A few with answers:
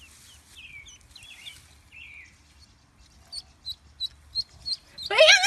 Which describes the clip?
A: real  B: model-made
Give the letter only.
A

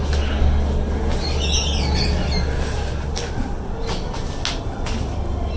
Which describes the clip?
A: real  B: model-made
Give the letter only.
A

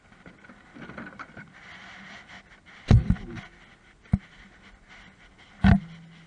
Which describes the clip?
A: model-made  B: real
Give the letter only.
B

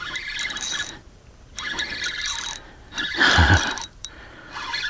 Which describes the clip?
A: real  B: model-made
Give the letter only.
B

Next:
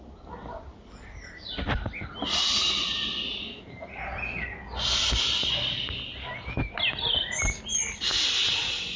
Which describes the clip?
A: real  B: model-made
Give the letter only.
A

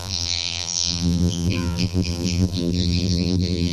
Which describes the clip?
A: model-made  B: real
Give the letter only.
A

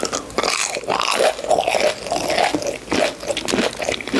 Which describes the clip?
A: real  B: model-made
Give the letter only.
A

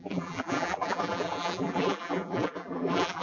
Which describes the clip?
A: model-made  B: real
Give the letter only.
A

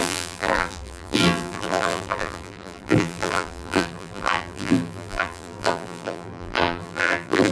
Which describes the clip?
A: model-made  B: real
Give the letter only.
A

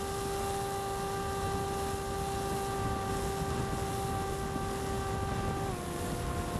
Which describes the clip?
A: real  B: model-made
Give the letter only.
A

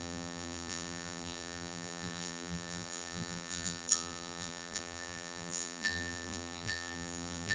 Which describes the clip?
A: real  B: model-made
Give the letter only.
B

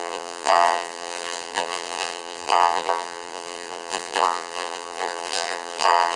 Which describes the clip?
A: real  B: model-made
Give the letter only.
B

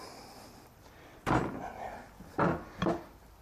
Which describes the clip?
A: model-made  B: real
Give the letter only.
B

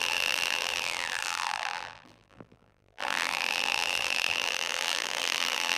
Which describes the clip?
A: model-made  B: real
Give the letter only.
A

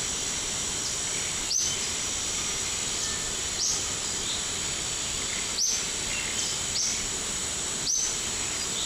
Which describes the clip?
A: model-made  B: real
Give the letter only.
B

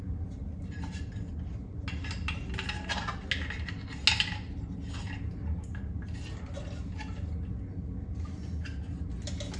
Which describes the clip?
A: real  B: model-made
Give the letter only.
A